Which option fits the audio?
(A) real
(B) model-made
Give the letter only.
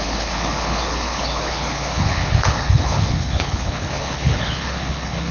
B